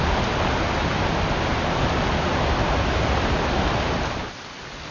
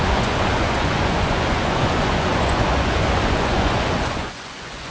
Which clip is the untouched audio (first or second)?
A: first